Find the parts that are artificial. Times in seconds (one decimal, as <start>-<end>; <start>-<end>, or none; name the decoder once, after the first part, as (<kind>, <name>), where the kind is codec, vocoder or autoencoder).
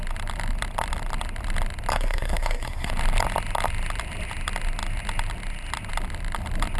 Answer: 1.9-2.9 (codec, SNAC)